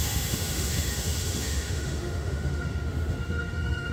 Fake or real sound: fake